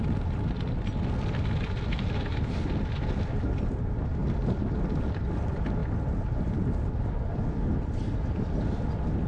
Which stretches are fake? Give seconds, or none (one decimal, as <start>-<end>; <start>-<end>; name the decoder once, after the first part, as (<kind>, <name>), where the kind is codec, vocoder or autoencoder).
none